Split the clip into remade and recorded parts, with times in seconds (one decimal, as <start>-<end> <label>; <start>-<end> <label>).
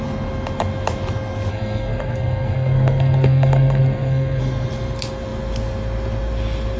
0.0-1.5 recorded; 1.5-4.4 remade; 4.4-6.8 recorded